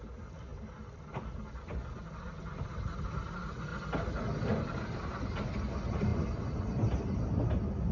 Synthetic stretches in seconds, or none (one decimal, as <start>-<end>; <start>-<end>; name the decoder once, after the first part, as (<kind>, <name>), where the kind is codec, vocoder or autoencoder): none